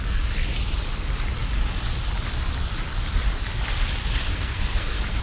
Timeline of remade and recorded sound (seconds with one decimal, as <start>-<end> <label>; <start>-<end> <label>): 0.0-4.3 recorded; 4.3-5.2 remade